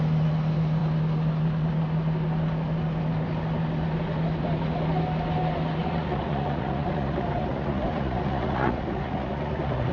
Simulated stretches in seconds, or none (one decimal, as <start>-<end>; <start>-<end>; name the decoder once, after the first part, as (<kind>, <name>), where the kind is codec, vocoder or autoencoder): 5.8-9.9 (vocoder, Vocos)